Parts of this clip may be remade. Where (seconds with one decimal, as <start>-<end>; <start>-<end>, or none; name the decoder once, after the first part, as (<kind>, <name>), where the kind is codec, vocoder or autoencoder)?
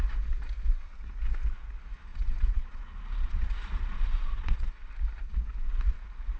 2.1-4.6 (vocoder, Vocos)